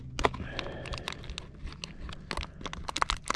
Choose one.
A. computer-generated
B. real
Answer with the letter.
B